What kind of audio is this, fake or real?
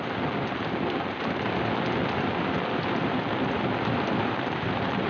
real